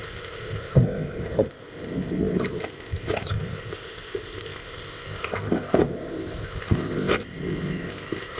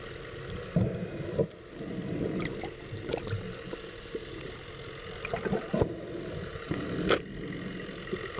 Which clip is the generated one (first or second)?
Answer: first